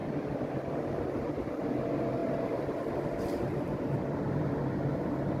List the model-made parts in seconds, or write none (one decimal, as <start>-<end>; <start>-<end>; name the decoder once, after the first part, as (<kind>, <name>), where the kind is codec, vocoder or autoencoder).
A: 2.2-4.4 (vocoder, BigVGAN v2)